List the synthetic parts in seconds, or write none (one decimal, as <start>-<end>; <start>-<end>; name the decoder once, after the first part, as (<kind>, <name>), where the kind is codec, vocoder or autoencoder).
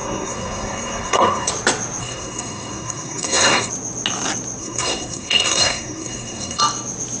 0.0-1.5 (codec, SNAC); 2.0-3.7; 4.6-6.6